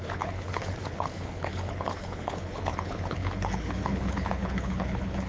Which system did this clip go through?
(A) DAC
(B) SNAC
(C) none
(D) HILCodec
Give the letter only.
D